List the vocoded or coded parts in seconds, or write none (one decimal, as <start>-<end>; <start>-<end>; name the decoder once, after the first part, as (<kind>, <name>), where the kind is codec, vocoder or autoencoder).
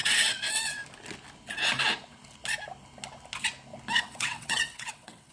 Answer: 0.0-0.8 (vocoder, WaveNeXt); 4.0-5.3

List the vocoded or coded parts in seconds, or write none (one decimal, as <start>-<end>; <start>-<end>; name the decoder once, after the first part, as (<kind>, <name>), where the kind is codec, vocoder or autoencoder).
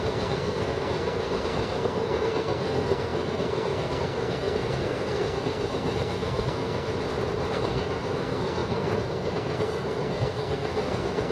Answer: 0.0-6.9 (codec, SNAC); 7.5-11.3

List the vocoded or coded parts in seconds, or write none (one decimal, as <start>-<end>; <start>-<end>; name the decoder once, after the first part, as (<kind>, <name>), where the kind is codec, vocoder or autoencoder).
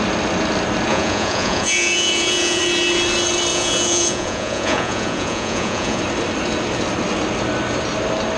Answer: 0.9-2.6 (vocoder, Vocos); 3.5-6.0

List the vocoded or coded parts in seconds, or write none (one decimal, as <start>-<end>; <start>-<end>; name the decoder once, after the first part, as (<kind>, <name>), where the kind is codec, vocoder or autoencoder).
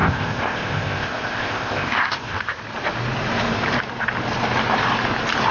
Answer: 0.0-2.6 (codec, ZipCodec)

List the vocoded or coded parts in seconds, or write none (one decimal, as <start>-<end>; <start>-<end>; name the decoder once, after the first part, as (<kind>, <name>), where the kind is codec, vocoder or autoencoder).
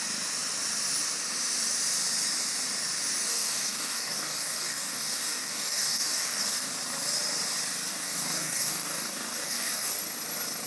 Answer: 3.3-6.7 (codec, DAC); 7.9-9.9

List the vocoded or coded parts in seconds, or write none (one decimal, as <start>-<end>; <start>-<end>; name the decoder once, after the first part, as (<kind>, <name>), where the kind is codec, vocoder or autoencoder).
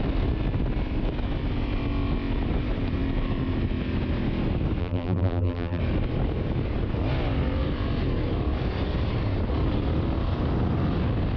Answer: 4.8-5.8 (vocoder, BigVGAN v2)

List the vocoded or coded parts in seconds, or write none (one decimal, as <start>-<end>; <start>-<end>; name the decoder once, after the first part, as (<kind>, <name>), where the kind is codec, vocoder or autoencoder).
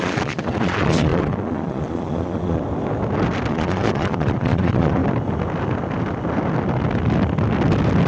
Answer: 0.0-2.6 (vocoder, Vocos); 3.5-5.0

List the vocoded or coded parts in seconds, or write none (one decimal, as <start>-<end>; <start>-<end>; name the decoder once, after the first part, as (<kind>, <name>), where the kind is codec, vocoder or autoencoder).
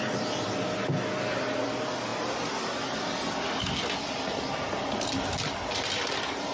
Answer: none